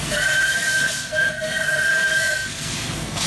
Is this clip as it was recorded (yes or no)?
no